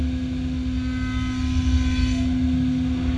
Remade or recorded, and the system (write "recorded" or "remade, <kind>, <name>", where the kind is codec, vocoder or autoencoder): recorded